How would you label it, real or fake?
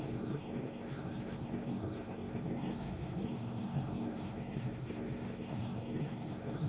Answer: fake